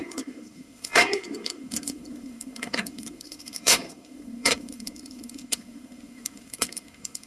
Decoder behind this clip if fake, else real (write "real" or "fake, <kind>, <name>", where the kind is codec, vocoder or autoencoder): fake, codec, SNAC